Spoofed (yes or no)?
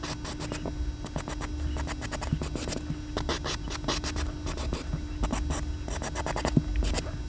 no